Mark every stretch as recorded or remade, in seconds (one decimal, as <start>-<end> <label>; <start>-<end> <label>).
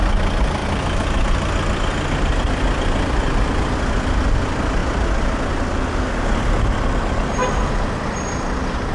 0.0-8.9 recorded